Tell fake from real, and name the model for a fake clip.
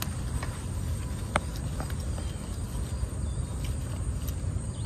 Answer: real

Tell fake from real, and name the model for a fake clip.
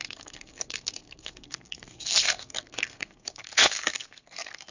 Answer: fake, codec, SNAC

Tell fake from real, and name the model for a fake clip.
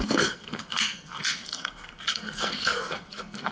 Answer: fake, codec, SNAC